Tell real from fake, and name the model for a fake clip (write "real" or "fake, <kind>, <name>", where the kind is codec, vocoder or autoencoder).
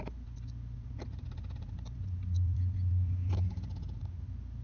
real